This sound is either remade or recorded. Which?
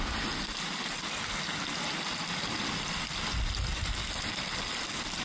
recorded